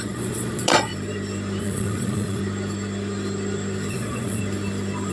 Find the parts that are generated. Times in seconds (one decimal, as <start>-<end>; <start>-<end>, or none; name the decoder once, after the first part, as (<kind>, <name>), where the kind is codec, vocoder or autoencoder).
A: 0.0-0.9 (vocoder, Vocos); 1.6-2.4; 3.9-4.4